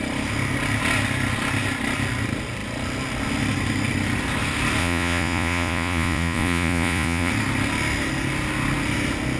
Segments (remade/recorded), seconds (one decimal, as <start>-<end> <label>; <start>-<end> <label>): 0.0-4.8 recorded; 4.8-7.3 remade; 7.3-9.4 recorded